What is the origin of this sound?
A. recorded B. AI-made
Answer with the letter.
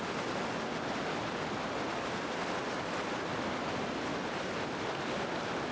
A